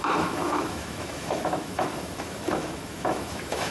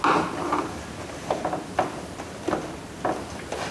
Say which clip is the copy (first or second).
first